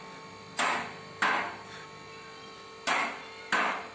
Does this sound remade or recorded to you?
recorded